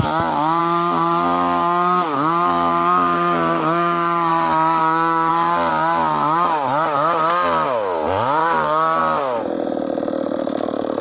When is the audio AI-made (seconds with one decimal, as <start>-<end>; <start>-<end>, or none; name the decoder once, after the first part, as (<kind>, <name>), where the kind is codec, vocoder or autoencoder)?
0.6-4.3 (codec, DAC); 4.8-5.3; 8.4-9.0